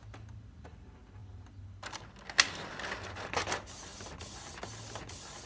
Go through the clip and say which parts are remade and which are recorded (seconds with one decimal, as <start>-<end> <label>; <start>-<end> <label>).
0.0-5.5 recorded

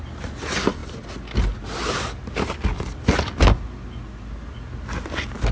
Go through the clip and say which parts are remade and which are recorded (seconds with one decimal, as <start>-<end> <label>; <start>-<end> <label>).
0.0-5.5 recorded

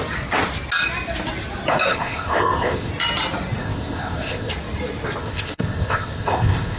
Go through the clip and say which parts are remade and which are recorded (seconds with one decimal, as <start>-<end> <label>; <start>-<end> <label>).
0.0-1.9 recorded; 1.9-2.9 remade; 2.9-3.6 recorded; 3.6-4.5 remade; 4.5-5.2 recorded; 5.2-6.8 remade

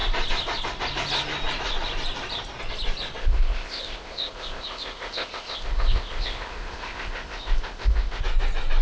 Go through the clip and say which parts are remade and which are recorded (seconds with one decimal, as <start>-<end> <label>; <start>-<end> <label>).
0.0-3.2 recorded; 3.2-8.2 remade; 8.2-8.8 recorded

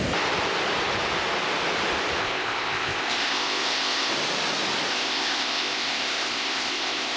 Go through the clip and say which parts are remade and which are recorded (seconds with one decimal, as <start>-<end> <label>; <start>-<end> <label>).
0.0-2.2 recorded; 2.2-4.1 remade; 4.1-4.9 recorded; 4.9-7.2 remade

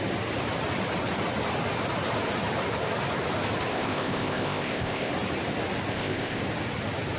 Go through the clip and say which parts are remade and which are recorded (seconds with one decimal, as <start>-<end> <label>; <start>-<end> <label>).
0.0-3.7 recorded; 3.7-5.1 remade; 5.1-5.9 recorded; 5.9-6.4 remade; 6.4-7.2 recorded

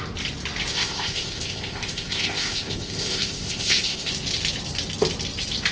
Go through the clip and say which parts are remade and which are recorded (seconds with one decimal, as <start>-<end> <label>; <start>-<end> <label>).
0.0-0.7 recorded; 0.7-4.1 remade; 4.1-5.7 recorded

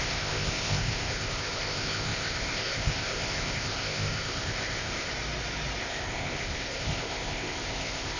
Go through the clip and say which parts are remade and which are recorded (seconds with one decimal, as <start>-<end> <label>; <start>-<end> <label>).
0.0-5.1 remade; 5.1-5.8 recorded; 5.8-8.2 remade